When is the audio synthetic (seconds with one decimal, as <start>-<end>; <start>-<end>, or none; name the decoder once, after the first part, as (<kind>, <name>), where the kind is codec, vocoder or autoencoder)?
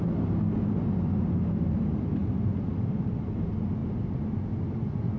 none